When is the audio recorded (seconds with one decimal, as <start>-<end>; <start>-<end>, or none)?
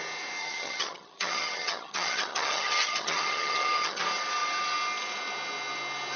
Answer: 0.0-0.4; 4.0-6.2